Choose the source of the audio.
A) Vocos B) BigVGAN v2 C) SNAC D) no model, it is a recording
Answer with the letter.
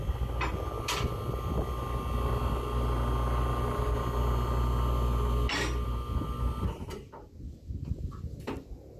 D